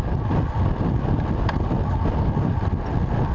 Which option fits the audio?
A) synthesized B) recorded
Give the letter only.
B